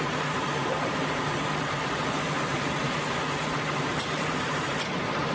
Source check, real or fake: fake